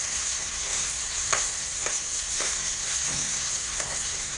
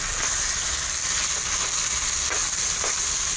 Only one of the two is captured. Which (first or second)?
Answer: second